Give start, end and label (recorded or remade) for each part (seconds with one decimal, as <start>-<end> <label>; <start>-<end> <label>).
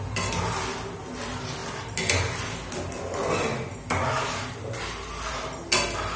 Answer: 0.0-6.2 recorded